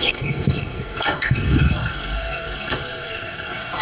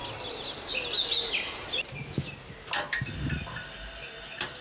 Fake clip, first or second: first